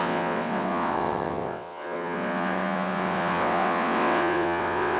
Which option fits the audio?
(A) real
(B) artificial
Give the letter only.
B